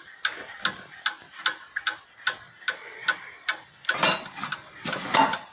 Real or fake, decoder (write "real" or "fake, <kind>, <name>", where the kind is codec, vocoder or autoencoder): real